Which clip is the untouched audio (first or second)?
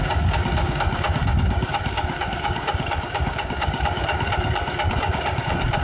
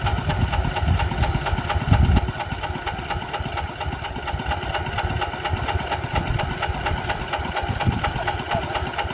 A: second